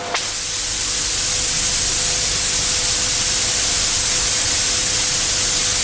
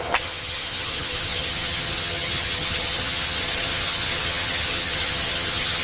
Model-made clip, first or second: second